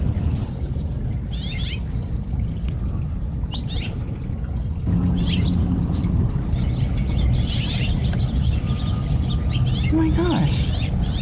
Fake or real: real